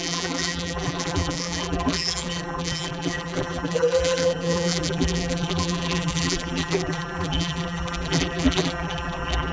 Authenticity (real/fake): fake